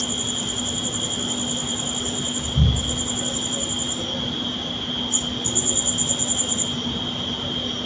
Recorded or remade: recorded